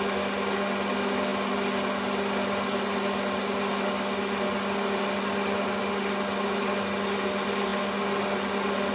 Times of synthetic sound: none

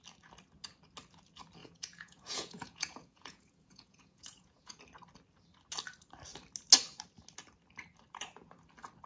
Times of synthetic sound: 1.6-4.8